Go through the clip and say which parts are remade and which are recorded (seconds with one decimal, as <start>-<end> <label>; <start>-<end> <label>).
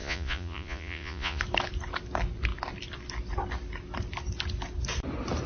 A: 0.0-1.4 remade; 1.4-5.5 recorded